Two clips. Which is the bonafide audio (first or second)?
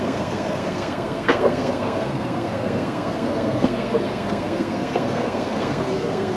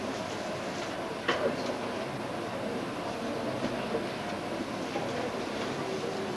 second